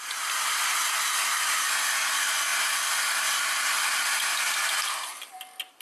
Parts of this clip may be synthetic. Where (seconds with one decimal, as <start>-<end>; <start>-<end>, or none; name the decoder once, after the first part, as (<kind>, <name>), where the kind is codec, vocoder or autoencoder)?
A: none